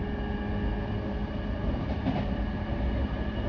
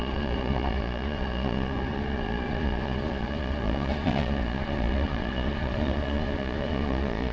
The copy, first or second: second